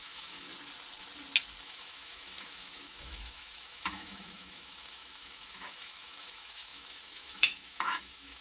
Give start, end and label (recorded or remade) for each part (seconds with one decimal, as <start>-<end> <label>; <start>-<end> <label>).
0.0-0.5 remade; 0.5-1.6 recorded; 1.6-8.4 remade